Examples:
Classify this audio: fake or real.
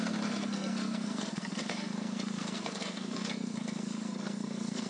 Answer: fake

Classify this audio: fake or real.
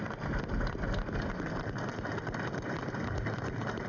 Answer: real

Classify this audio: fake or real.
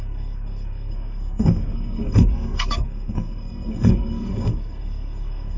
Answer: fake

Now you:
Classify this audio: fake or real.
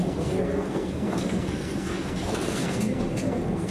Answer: fake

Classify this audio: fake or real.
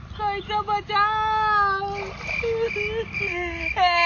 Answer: real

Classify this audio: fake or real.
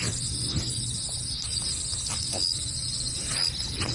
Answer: real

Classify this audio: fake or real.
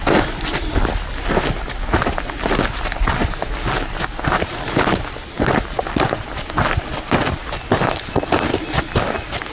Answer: real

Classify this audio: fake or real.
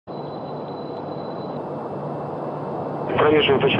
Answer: real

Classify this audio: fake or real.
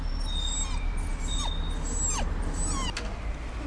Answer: real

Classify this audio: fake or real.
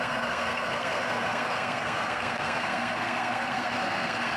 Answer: fake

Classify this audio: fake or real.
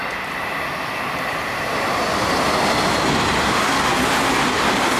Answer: real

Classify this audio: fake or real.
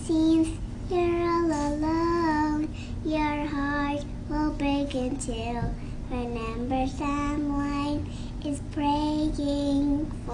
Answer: real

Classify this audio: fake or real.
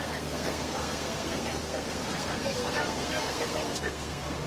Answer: fake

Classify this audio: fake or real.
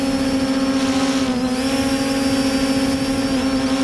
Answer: real